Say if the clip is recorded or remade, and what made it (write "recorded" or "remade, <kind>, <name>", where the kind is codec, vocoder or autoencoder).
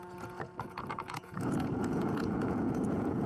remade, vocoder, Vocos